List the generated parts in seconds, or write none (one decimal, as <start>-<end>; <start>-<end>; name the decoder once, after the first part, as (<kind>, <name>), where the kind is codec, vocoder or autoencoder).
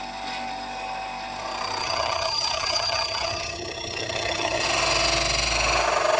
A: 1.8-4.6 (vocoder, HiFi-GAN)